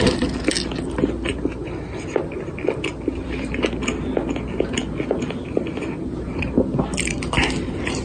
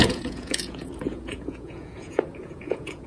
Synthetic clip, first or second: second